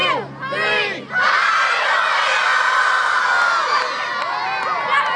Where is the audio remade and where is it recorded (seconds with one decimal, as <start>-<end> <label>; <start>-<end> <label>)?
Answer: 0.0-5.2 recorded